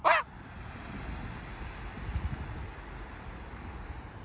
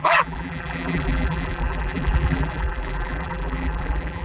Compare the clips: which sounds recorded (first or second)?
first